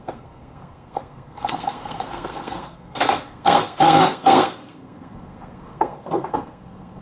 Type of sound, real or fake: fake